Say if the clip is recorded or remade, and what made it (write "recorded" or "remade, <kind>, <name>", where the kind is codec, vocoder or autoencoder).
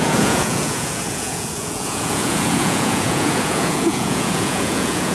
remade, vocoder, Vocos